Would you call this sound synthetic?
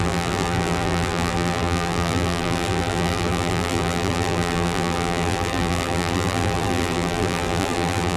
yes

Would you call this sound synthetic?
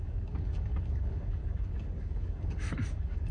yes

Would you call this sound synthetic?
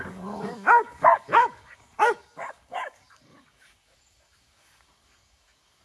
yes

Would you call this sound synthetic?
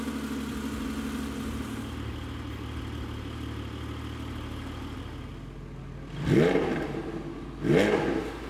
no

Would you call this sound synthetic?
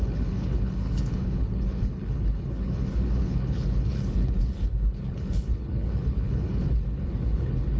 yes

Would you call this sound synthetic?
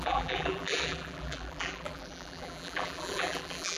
yes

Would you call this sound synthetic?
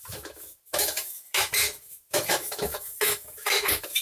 yes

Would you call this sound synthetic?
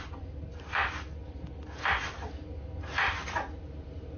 no